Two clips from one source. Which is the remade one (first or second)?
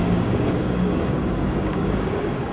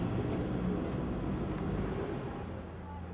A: first